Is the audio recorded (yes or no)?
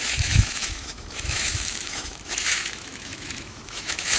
no